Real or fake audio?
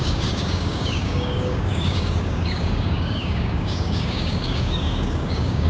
fake